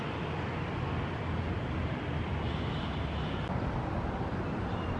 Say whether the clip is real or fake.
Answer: real